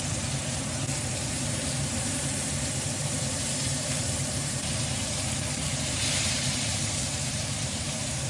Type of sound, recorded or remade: remade